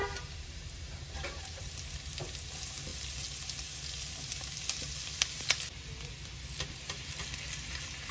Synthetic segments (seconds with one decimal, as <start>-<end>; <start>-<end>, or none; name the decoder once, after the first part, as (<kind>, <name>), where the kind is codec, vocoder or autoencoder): 0.0-1.7 (vocoder, BigVGAN v2)

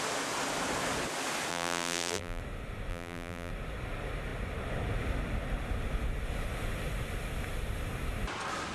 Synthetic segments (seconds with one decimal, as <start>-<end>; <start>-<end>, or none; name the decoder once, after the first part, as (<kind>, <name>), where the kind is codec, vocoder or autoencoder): 1.5-2.4 (vocoder, BigVGAN v2); 2.9-3.5